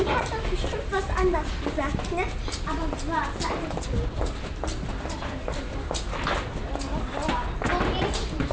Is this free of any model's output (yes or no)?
yes